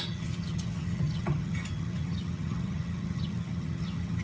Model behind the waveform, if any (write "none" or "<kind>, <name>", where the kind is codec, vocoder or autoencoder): vocoder, HiFi-GAN